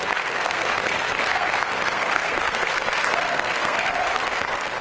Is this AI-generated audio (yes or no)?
yes